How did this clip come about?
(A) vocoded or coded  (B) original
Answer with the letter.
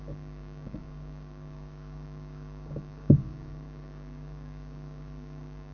A